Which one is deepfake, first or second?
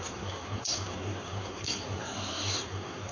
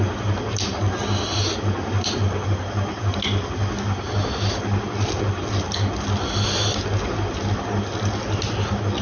first